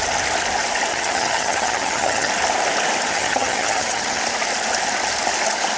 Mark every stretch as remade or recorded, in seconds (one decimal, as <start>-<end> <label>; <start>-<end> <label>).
0.0-0.9 recorded; 0.9-2.3 remade; 2.3-3.1 recorded; 3.1-4.2 remade; 4.2-5.8 recorded